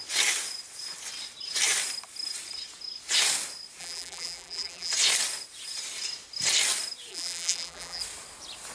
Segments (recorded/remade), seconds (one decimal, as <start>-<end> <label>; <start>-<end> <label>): 0.0-3.8 recorded; 3.8-4.9 remade; 4.9-7.1 recorded; 7.1-8.0 remade; 8.0-8.7 recorded